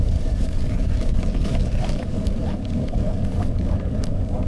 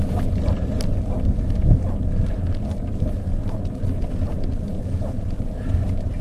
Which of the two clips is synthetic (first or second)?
first